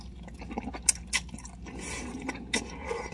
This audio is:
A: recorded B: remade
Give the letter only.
A